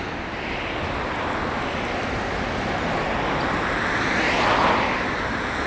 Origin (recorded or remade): remade